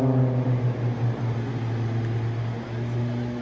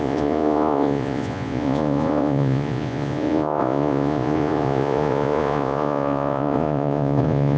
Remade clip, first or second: second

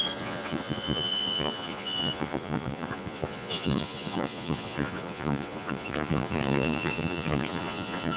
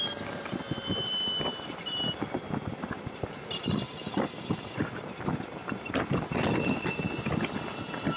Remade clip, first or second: first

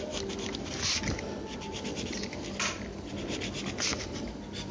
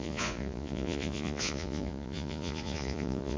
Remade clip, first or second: second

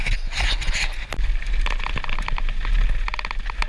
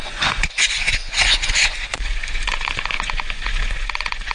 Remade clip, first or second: second